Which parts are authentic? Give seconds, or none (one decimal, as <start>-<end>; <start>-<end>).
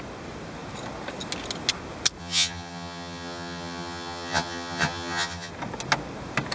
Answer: 0.0-2.2; 5.5-6.5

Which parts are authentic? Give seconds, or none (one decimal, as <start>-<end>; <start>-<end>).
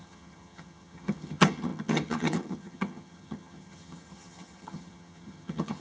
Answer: none